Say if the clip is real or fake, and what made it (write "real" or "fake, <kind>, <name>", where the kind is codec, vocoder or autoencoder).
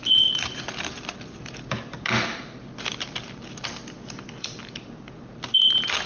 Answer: real